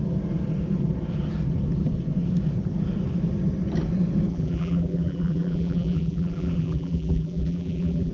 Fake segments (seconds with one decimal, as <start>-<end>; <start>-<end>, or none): 4.3-8.1